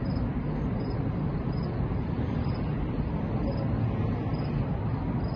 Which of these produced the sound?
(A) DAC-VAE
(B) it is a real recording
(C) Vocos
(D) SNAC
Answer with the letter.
B